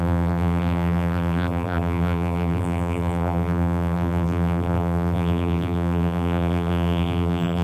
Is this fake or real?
fake